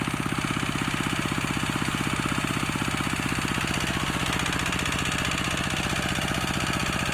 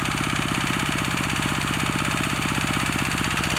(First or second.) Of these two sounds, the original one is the first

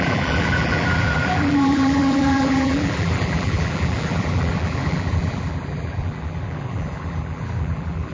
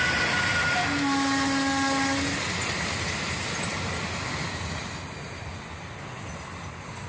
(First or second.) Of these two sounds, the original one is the second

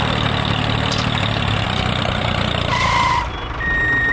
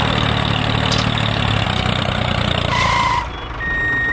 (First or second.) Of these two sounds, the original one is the second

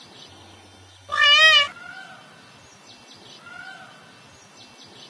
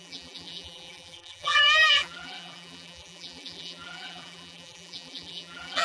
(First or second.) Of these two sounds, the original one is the first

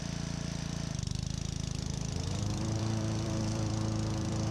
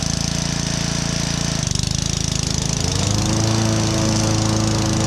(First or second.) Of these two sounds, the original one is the second